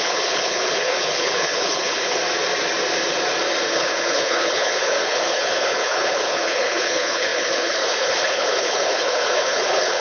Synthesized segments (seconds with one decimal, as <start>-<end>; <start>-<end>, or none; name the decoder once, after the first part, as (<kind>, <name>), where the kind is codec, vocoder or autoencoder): 0.0-2.2 (codec, HILCodec); 3.7-10.0